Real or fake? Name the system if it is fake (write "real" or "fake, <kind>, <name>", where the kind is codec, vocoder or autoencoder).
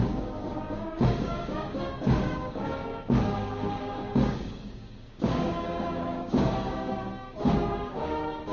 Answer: fake, codec, DAC